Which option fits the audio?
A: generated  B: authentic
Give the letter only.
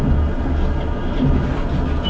B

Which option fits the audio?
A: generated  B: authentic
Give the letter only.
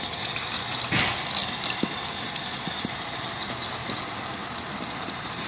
B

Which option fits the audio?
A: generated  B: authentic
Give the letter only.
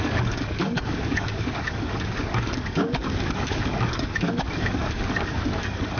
A